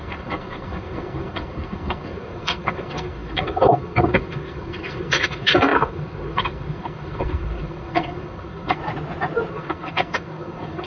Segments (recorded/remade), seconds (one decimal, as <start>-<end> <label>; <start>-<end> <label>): 0.0-8.8 remade; 8.8-9.5 recorded; 9.5-10.9 remade

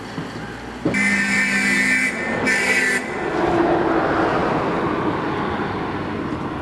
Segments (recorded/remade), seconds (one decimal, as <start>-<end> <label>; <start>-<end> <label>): 0.0-6.6 recorded

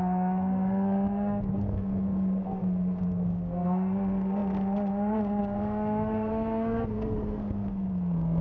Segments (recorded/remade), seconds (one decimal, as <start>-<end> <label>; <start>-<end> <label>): 0.0-8.4 remade

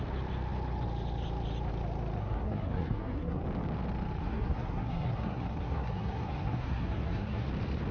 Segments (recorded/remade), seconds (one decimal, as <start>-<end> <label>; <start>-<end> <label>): 0.0-2.2 recorded; 2.2-3.4 remade; 3.4-4.2 recorded; 4.2-7.5 remade; 7.5-7.9 recorded

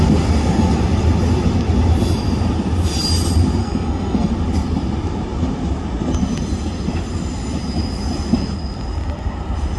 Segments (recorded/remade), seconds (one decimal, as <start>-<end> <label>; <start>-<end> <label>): 0.0-3.6 recorded; 3.6-4.3 remade; 4.3-9.8 recorded

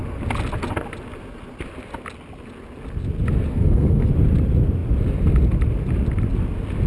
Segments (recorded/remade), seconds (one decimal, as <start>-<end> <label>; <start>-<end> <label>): 0.0-3.5 recorded; 3.5-4.1 remade; 4.1-6.9 recorded

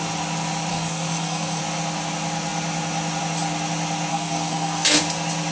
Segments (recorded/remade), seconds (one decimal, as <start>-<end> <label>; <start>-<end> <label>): 0.0-0.7 recorded; 0.7-1.6 remade; 1.6-4.1 recorded; 4.1-5.0 remade; 5.0-5.5 recorded